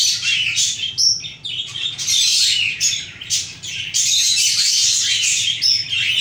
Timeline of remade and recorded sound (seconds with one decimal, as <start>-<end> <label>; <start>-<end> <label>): 0.0-0.9 remade; 0.9-2.3 recorded; 2.3-4.3 remade; 4.3-6.2 recorded